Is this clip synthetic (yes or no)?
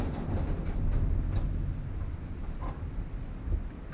no